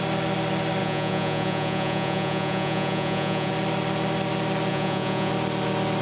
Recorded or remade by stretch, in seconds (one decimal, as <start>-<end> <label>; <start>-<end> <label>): 0.0-0.8 recorded; 0.8-3.5 remade; 3.5-4.7 recorded; 4.7-5.3 remade; 5.3-6.0 recorded